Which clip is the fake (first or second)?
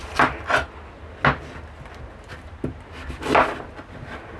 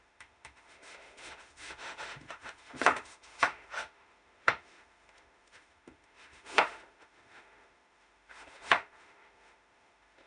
second